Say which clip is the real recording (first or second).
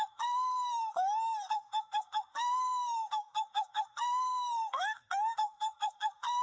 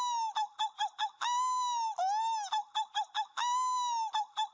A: second